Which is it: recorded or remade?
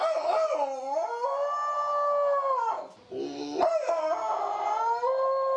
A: recorded